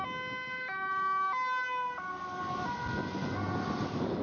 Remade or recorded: recorded